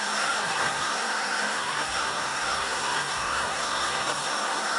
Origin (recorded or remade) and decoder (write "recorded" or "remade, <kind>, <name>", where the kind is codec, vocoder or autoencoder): remade, codec, SNAC